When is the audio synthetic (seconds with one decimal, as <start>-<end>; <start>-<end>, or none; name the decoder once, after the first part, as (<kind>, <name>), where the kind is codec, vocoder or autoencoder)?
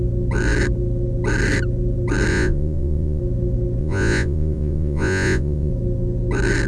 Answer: 2.3-3.2 (vocoder, Vocos); 3.8-5.7